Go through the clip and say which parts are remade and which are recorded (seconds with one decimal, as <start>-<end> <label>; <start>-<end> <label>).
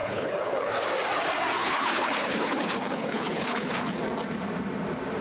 0.0-0.7 remade; 0.7-1.6 recorded; 1.6-4.0 remade; 4.0-5.2 recorded